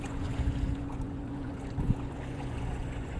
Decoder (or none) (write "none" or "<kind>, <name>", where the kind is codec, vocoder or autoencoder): vocoder, Vocos